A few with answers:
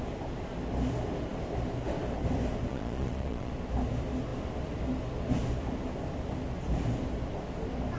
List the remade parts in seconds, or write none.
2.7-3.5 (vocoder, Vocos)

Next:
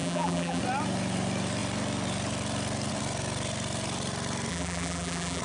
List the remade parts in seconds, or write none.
0.0-0.6 (vocoder, BigVGAN v2); 4.5-5.4

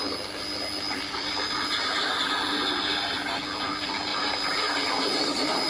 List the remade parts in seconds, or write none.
none

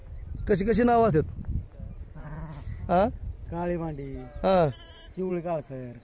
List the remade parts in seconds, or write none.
none

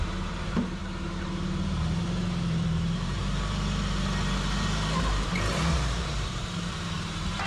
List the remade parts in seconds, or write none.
0.0-3.2 (vocoder, BigVGAN v2); 5.7-7.5

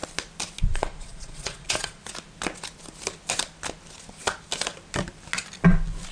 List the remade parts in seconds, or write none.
0.6-2.0 (vocoder, Vocos)